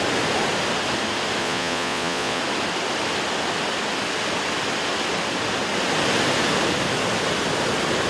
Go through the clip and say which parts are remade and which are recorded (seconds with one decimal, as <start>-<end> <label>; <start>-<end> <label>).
0.0-1.4 recorded; 1.4-2.4 remade; 2.4-8.1 recorded